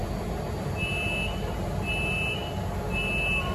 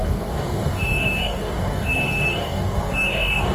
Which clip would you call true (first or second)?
first